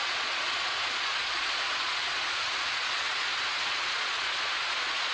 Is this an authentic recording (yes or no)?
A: no